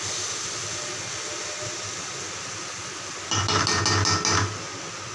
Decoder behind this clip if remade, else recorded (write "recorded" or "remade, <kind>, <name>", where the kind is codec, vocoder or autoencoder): recorded